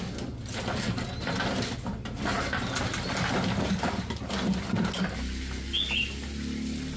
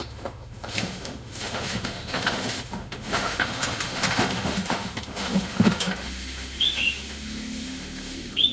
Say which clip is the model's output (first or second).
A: second